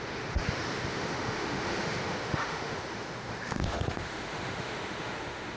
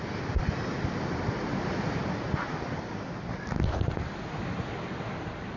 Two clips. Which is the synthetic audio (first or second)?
first